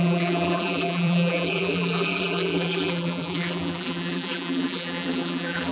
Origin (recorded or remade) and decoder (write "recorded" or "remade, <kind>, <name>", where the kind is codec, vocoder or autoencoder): remade, vocoder, BigVGAN v2